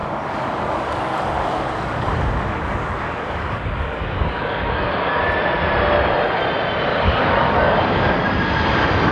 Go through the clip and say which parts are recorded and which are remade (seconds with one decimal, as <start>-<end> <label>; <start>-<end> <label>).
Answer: 0.0-5.2 remade; 5.2-6.9 recorded; 6.9-8.2 remade; 8.2-9.1 recorded